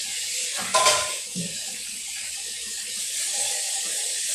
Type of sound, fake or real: fake